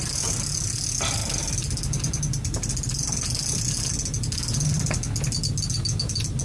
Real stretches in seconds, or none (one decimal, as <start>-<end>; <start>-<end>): 0.0-6.4